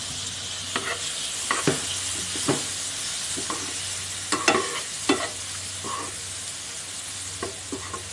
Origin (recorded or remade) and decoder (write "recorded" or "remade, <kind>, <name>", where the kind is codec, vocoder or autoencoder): recorded